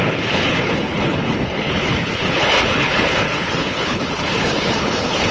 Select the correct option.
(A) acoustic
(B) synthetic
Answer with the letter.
B